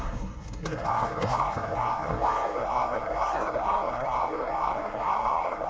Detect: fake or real fake